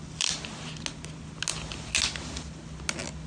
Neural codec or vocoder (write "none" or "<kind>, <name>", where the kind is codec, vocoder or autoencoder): none